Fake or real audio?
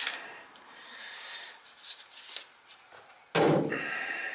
real